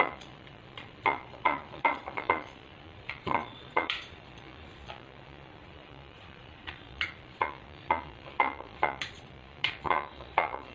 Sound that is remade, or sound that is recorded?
remade